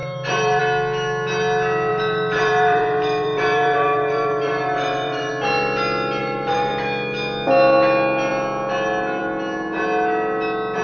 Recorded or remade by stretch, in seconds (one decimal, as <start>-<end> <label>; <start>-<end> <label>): 0.0-0.6 remade; 0.6-1.9 recorded; 1.9-5.3 remade; 5.3-6.2 recorded; 6.2-6.7 remade; 6.7-10.8 recorded